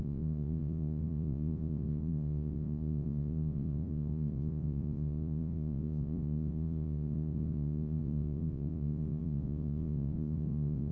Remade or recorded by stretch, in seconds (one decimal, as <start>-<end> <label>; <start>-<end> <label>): 0.0-10.9 remade